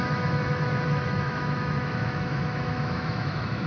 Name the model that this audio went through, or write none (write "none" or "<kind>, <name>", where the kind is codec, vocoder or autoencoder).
autoencoder, DAC-VAE